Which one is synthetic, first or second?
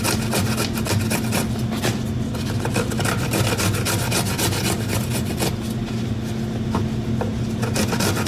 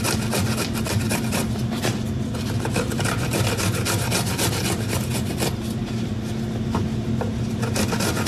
second